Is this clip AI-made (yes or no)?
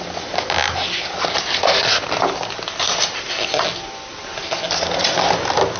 no